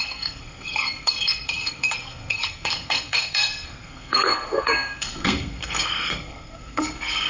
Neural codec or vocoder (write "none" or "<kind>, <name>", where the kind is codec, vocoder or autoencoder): codec, SNAC